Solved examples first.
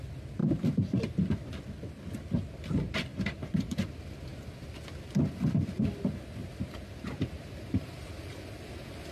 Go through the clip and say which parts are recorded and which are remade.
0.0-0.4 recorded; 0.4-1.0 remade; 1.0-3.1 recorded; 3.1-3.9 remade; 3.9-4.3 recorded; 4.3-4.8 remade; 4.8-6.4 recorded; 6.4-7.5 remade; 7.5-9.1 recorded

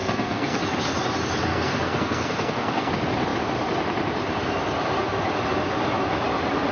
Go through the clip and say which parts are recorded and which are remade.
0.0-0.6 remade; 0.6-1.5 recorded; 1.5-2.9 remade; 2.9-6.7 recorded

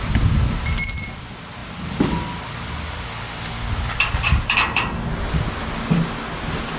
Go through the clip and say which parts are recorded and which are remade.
0.0-6.8 recorded

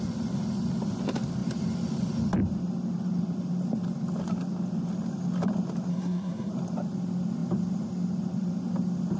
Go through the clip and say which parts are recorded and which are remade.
0.0-5.9 recorded; 5.9-6.5 remade; 6.5-9.2 recorded

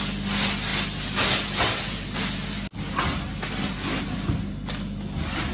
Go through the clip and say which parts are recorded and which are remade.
0.0-5.5 recorded

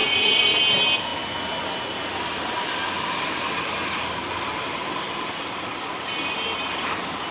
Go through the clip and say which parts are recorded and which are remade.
0.0-0.6 remade; 0.6-7.3 recorded

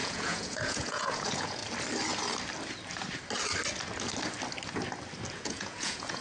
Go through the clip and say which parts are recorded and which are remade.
0.0-1.6 remade; 1.6-5.3 recorded; 5.3-6.2 remade

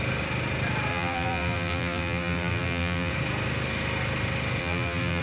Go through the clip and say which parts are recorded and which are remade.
0.0-0.9 recorded; 0.9-3.1 remade; 3.1-4.6 recorded; 4.6-5.2 remade